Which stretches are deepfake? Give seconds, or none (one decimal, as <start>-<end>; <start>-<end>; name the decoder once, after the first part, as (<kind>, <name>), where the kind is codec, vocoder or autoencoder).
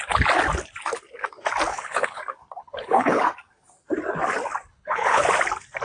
1.7-2.2 (codec, HILCodec); 2.6-3.2; 4.7-5.2